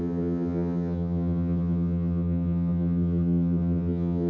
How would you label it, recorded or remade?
remade